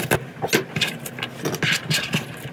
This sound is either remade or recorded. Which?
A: recorded